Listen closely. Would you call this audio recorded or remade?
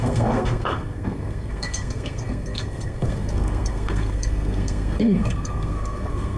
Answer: remade